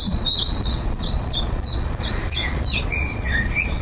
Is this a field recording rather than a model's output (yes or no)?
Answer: no